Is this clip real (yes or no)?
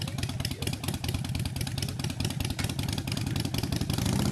yes